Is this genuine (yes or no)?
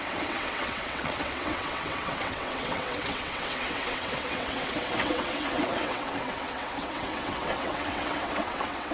no